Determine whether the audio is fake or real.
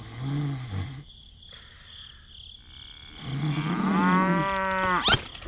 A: real